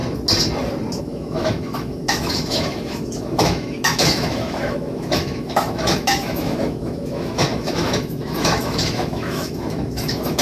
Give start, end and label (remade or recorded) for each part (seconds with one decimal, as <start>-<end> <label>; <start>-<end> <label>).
0.0-1.0 recorded; 1.0-10.4 remade